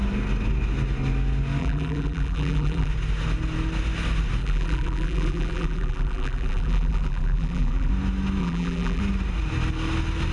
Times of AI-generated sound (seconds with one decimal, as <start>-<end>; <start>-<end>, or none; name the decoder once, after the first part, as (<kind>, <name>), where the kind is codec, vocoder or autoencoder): 1.6-2.9 (vocoder, BigVGAN v2); 4.4-7.9; 8.4-9.0